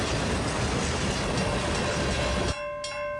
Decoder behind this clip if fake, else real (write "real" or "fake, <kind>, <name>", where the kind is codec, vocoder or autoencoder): real